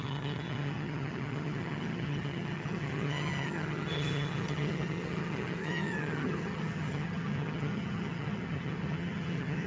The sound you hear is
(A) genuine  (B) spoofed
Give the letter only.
B